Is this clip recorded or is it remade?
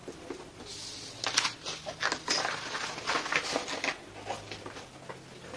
recorded